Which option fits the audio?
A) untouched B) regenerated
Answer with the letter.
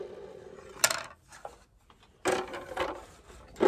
A